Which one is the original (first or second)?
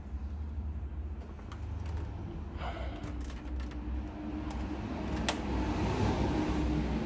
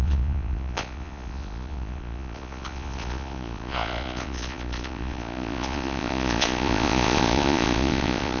first